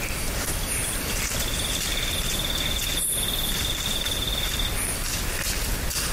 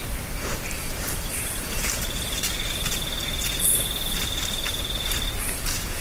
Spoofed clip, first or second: second